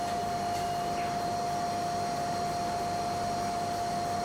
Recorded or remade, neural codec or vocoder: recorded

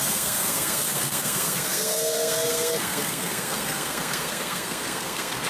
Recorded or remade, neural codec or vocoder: remade, codec, SNAC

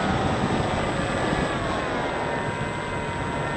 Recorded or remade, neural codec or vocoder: recorded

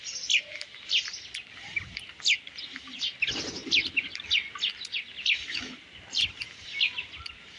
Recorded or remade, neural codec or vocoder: recorded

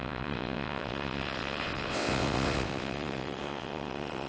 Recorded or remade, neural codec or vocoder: remade, vocoder, WaveNeXt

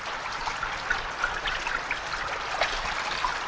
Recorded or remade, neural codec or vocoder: remade, vocoder, BigVGAN v2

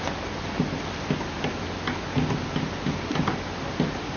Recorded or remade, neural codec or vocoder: recorded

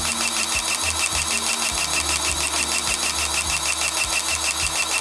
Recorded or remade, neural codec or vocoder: recorded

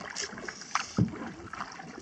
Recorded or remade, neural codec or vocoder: recorded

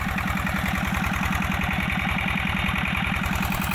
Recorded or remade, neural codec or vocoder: recorded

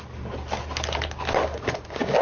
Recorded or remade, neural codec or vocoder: recorded